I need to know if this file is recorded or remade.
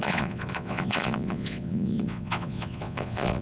remade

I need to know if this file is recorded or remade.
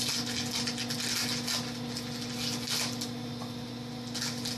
recorded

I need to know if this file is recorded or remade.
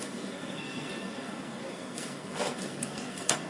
remade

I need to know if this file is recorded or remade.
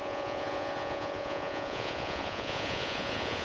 remade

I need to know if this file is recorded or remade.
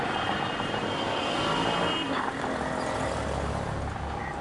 recorded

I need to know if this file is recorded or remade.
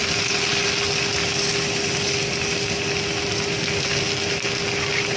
recorded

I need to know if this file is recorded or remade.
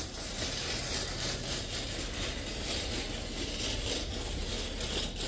recorded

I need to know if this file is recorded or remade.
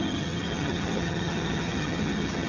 remade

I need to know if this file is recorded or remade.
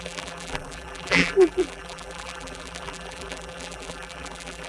remade